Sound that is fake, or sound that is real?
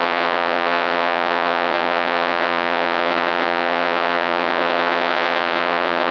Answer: fake